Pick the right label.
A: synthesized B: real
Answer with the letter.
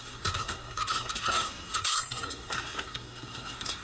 A